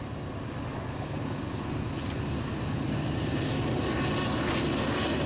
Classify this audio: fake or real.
real